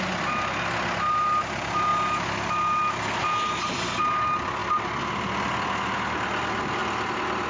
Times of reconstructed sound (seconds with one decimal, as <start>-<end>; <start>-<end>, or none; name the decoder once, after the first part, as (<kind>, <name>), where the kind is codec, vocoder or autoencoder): none